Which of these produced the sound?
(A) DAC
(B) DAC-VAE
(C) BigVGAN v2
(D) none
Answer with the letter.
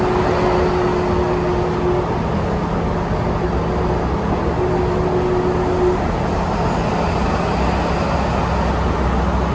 D